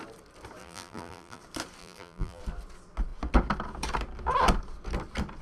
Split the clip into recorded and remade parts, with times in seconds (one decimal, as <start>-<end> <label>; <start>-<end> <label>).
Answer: 0.0-0.6 recorded; 0.6-1.4 remade; 1.4-1.8 recorded; 1.8-2.4 remade; 2.4-5.4 recorded